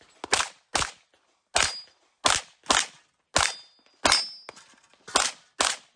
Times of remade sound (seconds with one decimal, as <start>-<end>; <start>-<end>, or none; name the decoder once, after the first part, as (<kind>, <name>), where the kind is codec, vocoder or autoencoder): none